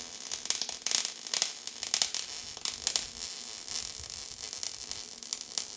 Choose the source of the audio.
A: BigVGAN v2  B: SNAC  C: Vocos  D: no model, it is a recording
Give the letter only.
D